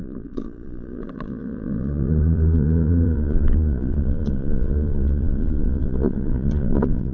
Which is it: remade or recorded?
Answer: remade